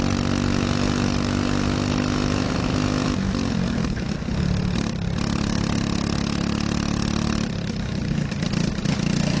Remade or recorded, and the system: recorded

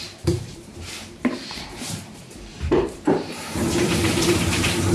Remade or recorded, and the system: remade, vocoder, BigVGAN v2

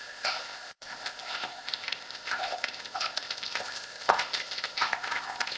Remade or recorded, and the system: remade, codec, ZipCodec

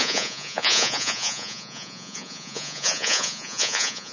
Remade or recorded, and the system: remade, vocoder, Vocos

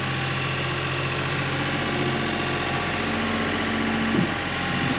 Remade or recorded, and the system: recorded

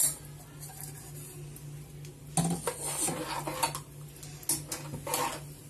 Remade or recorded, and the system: recorded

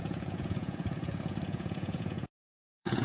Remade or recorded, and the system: remade, vocoder, Vocos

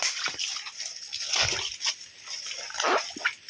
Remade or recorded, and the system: recorded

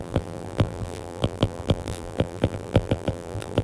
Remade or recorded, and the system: remade, vocoder, BigVGAN v2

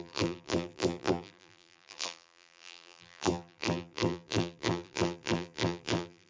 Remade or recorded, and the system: remade, vocoder, BigVGAN v2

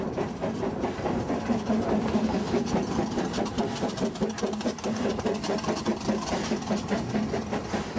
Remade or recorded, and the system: remade, vocoder, BigVGAN v2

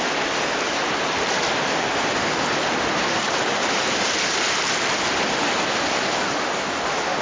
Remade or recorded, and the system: recorded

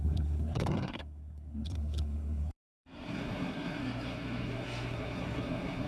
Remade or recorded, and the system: remade, codec, SNAC